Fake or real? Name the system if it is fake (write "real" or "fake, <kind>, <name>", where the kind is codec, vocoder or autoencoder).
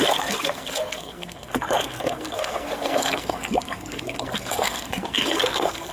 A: fake, codec, SNAC